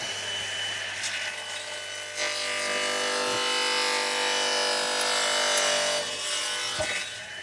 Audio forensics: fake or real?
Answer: real